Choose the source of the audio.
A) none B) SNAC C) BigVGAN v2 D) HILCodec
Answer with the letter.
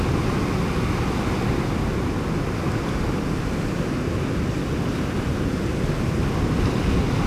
A